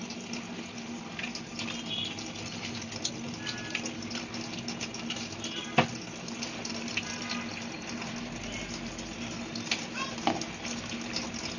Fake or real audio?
real